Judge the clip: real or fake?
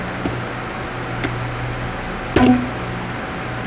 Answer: real